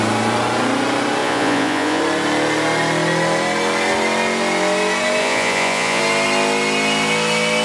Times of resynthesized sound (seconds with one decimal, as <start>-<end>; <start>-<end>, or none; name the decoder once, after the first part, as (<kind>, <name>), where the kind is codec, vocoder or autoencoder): 1.2-2.0 (vocoder, Vocos); 5.2-6.0